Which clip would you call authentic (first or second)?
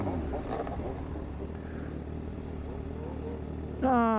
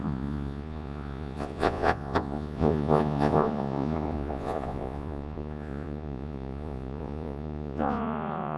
first